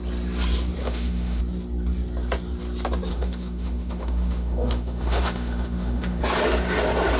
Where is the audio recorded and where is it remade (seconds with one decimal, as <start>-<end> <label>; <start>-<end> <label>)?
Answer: 0.0-0.8 recorded; 0.8-1.4 remade; 1.4-3.1 recorded; 3.1-6.2 remade; 6.2-7.2 recorded